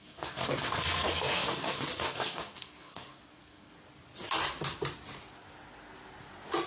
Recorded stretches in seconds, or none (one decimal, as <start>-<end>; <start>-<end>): 3.7-6.7